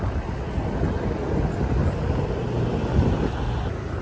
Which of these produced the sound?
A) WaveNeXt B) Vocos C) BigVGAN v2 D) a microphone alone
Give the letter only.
D